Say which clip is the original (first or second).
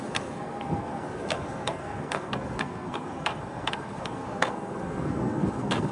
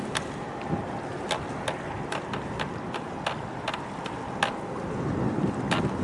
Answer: second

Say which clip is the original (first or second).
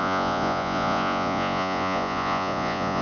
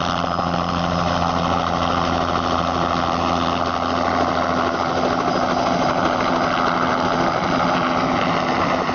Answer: second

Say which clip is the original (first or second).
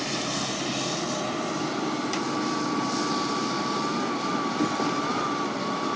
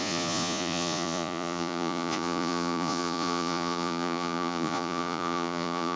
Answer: first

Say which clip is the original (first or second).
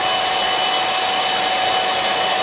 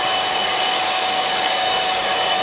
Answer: first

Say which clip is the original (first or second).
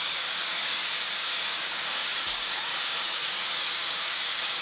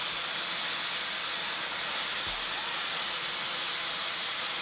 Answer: second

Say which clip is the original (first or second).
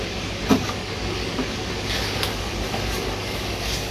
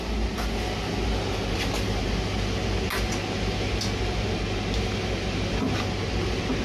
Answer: second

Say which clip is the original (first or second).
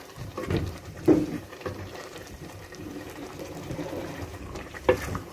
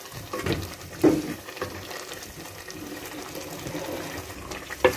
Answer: second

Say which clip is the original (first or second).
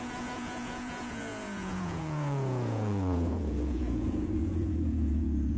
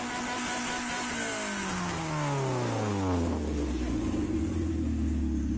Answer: second